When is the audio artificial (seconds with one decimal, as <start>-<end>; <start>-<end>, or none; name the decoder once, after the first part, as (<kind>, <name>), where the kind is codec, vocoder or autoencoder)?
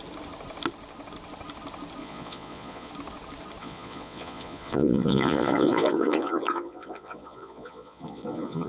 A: 2.0-2.9 (vocoder, Vocos); 3.6-8.7